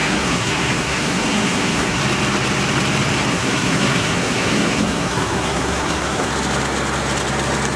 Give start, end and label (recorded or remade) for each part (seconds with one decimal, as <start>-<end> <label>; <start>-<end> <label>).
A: 0.0-2.0 remade; 2.0-3.3 recorded; 3.3-6.3 remade; 6.3-7.8 recorded

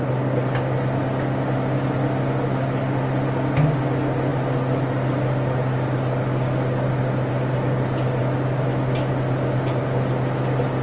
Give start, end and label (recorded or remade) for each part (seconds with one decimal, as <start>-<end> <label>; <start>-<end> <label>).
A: 0.0-10.8 recorded

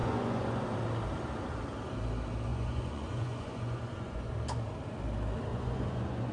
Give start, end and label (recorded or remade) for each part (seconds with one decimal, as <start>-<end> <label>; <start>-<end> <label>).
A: 0.0-0.6 remade; 0.6-2.5 recorded; 2.5-4.3 remade; 4.3-5.5 recorded; 5.5-6.3 remade

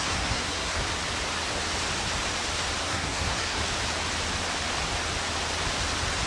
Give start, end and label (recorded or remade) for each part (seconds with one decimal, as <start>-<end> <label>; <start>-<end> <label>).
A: 0.0-0.7 remade; 0.7-2.8 recorded; 2.8-3.6 remade; 3.6-6.3 recorded

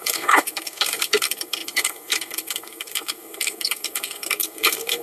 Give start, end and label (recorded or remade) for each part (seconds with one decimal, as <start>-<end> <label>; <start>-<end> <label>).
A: 0.0-5.0 remade

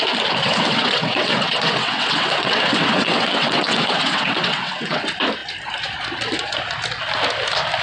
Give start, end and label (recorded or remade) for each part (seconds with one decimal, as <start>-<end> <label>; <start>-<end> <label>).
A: 0.0-0.4 recorded; 0.4-5.0 remade; 5.0-7.8 recorded

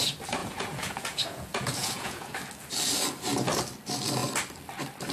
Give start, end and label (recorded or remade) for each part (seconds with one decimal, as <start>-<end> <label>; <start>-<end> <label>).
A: 0.0-0.4 recorded; 0.4-2.3 remade; 2.3-5.1 recorded